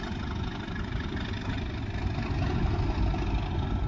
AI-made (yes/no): no